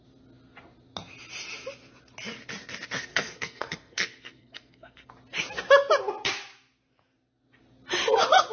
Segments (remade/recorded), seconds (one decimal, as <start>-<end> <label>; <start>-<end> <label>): 0.0-3.1 recorded; 3.1-5.1 remade; 5.1-8.5 recorded